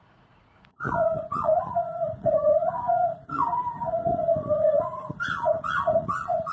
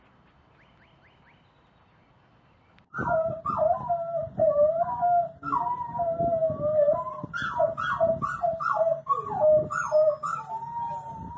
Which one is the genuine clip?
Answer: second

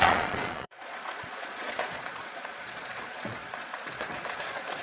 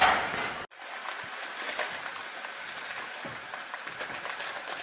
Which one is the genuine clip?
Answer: second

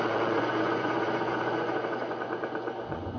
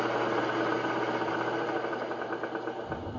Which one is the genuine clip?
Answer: second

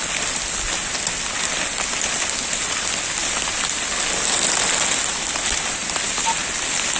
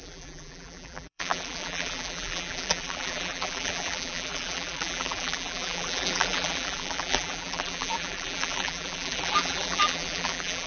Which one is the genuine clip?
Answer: first